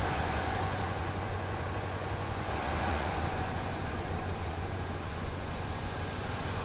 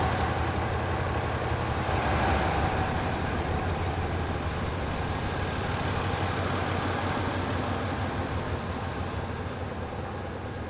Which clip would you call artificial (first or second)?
first